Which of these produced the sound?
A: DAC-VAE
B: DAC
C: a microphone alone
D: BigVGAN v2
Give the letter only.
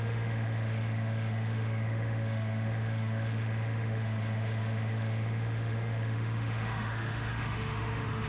A